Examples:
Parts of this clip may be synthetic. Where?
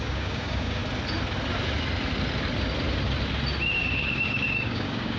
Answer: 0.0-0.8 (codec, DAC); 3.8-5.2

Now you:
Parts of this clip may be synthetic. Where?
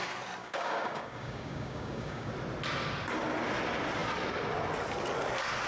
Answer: 0.4-2.3 (codec, DAC)